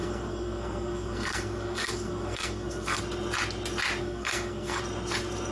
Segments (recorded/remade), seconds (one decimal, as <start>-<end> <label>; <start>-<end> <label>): 0.0-3.0 remade; 3.0-4.0 recorded; 4.0-4.8 remade; 4.8-5.5 recorded